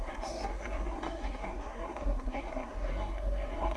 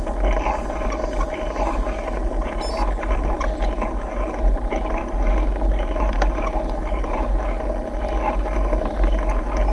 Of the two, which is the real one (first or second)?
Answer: second